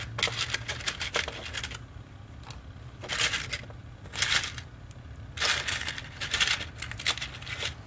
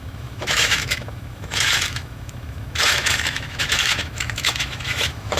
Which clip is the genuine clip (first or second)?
first